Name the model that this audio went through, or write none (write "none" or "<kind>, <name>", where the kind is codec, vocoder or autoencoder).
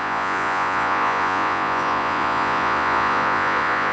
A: vocoder, Vocos